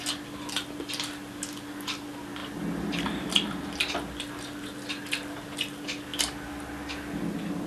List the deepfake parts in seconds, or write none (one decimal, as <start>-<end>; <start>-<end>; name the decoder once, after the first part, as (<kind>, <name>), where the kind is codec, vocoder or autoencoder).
none